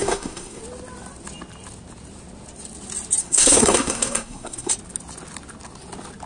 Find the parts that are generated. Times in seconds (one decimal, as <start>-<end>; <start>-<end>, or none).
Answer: 0.0-0.6; 3.2-4.7